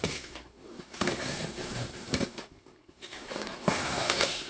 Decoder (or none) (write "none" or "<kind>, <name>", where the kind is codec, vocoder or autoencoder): codec, SNAC